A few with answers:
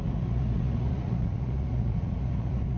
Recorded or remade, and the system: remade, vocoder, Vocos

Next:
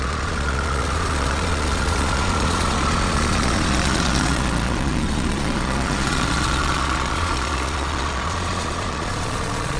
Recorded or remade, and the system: remade, vocoder, Vocos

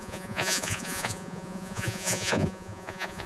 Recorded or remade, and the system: remade, vocoder, Vocos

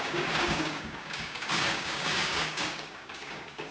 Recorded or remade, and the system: remade, codec, DAC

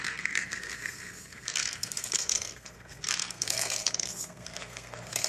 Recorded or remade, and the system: remade, codec, SNAC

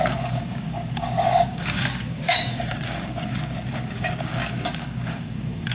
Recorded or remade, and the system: remade, codec, DAC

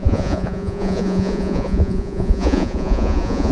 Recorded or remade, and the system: remade, vocoder, Vocos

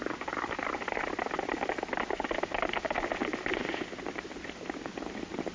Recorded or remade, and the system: recorded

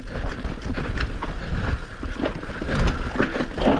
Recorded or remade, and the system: remade, vocoder, BigVGAN v2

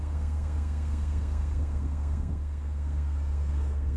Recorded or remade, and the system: remade, codec, SNAC